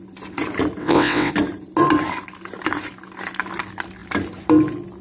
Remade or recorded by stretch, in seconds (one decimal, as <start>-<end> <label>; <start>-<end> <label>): 0.0-0.8 recorded; 0.8-1.3 remade; 1.3-5.0 recorded